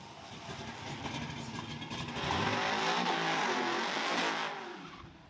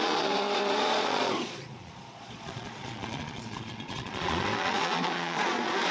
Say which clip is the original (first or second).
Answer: first